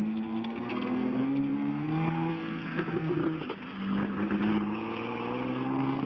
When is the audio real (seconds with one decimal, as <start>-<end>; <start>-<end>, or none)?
3.2-5.5